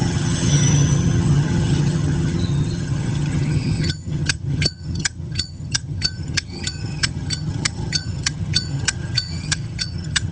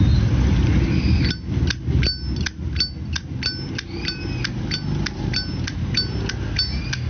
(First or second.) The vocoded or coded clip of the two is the first